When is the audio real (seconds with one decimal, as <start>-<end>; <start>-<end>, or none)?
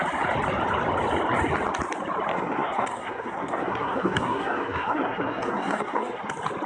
0.0-2.3; 6.3-6.7